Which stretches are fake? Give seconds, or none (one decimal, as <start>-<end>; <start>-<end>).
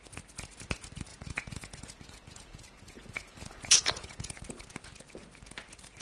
1.1-4.4